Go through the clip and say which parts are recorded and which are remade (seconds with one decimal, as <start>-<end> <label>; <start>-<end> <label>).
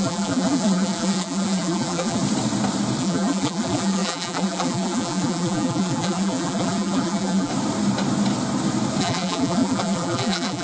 0.0-2.2 remade; 2.2-3.0 recorded; 3.0-7.5 remade; 7.5-9.0 recorded; 9.0-10.6 remade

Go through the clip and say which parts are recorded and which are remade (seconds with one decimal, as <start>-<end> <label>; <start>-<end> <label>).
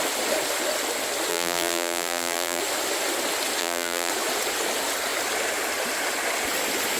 0.0-1.3 recorded; 1.3-2.6 remade; 2.6-3.6 recorded; 3.6-4.1 remade; 4.1-7.0 recorded